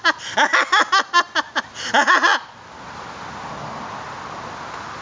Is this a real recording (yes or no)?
yes